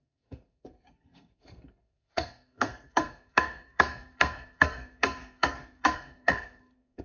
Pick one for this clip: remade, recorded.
remade